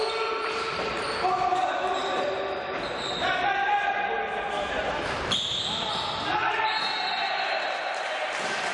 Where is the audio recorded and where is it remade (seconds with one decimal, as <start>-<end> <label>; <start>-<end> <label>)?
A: 0.0-8.7 recorded